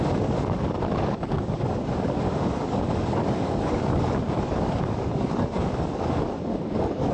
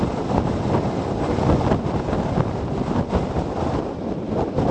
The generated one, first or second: first